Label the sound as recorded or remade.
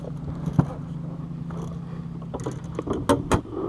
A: recorded